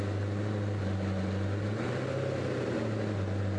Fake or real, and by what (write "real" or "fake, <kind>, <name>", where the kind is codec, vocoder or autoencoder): real